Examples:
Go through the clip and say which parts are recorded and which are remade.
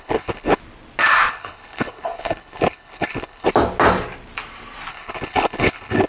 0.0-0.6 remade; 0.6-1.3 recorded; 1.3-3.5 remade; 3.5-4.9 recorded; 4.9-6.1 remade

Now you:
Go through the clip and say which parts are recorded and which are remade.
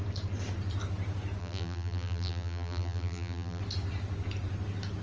0.0-1.4 recorded; 1.4-3.6 remade; 3.6-5.0 recorded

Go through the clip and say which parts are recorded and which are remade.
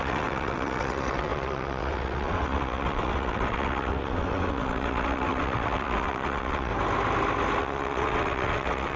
0.0-6.7 remade; 6.7-7.6 recorded; 7.6-9.0 remade